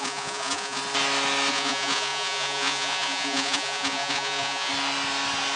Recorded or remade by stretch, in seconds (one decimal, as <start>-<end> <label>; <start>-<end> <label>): 0.0-0.8 remade; 0.8-1.5 recorded; 1.5-4.7 remade; 4.7-5.6 recorded